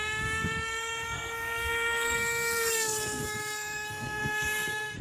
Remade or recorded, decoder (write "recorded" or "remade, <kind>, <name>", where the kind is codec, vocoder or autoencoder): remade, codec, SNAC